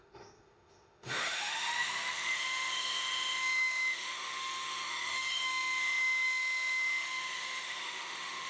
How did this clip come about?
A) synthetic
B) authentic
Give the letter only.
A